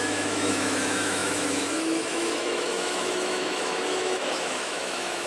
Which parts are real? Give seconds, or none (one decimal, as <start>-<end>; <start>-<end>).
none